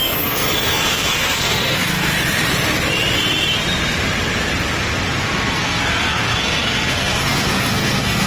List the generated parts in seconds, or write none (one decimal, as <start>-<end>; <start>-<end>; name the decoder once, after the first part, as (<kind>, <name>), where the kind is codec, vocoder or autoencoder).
0.0-2.0 (codec, SNAC); 5.5-8.3